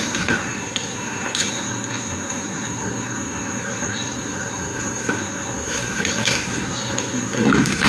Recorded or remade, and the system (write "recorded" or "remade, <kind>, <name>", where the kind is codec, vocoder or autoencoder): remade, codec, SNAC